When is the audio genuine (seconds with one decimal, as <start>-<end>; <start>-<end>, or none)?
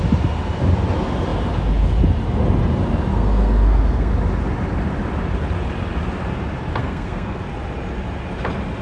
0.0-3.1; 4.1-6.8; 7.4-8.8